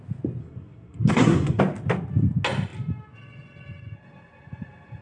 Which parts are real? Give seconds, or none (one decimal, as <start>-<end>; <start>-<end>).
0.0-0.4; 1.6-5.0